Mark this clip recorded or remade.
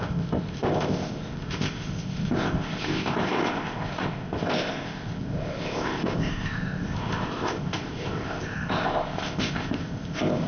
remade